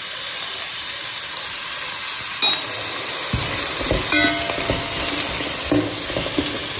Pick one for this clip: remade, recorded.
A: recorded